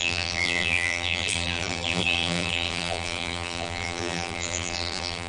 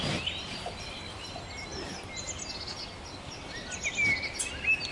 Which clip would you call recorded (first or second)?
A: second